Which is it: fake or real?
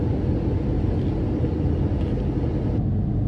real